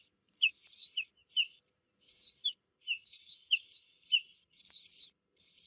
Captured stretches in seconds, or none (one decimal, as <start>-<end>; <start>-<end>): 0.0-1.2; 4.6-5.7